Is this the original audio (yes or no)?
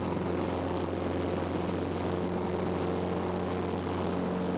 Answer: yes